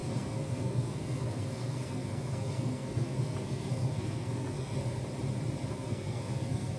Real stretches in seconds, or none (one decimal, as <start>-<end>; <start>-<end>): 5.0-5.7